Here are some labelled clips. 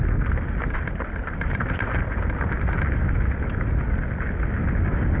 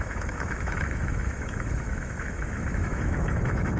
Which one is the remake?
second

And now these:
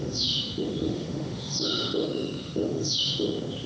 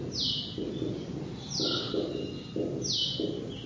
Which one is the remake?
first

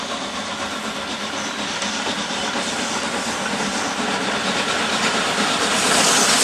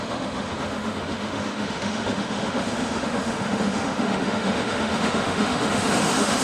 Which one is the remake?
second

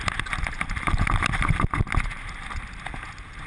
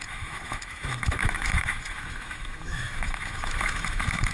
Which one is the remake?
second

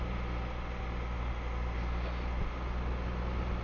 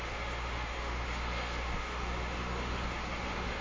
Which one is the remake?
second